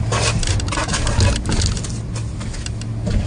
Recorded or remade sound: recorded